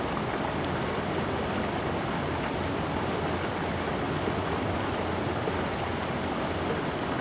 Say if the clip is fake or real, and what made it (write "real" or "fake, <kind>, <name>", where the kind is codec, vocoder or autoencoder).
real